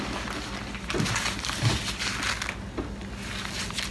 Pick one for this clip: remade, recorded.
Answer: recorded